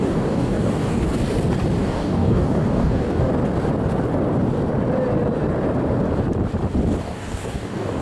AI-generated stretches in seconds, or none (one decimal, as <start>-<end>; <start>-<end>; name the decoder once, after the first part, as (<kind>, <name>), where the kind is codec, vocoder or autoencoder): 0.0-1.1 (codec, DAC); 1.8-3.3; 7.0-8.0